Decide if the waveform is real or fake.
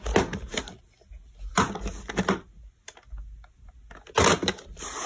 real